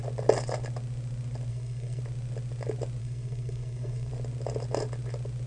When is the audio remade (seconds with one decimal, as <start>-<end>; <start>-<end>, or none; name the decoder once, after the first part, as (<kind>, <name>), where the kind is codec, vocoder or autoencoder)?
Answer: 1.5-2.0 (codec, SNAC); 3.0-4.1